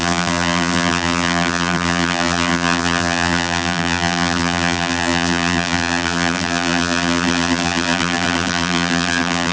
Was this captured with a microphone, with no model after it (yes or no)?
no